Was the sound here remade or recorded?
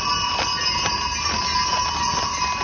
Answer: recorded